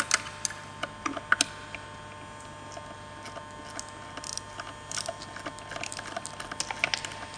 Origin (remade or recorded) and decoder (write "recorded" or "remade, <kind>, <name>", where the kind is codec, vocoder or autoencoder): recorded